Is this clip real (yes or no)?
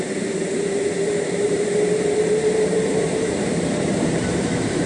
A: no